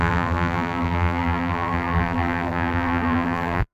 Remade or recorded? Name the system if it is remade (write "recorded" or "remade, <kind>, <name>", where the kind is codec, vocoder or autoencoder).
remade, vocoder, BigVGAN v2